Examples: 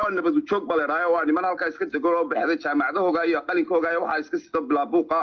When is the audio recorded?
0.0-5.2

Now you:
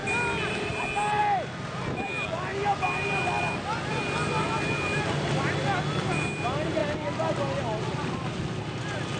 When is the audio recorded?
0.0-9.2

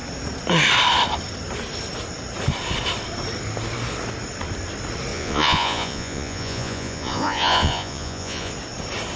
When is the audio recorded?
0.0-5.1; 8.5-9.2

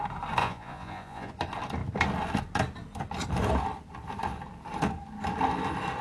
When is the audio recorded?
0.0-0.4; 1.3-6.0